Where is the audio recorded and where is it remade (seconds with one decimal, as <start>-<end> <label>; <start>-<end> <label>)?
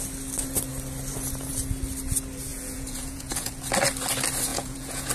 0.0-2.5 recorded; 2.5-3.5 remade; 3.5-4.5 recorded; 4.5-5.1 remade